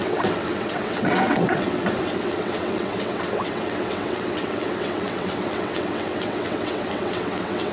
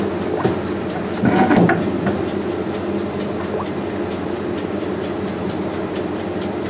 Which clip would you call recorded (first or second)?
second